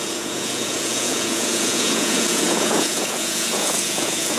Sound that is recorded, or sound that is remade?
remade